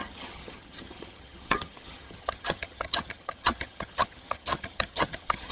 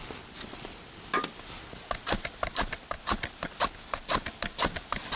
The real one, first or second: second